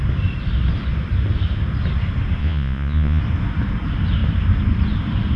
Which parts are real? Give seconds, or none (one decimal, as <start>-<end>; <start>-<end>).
0.0-2.4; 3.2-5.4